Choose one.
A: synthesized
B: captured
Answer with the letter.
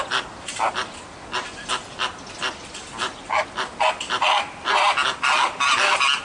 B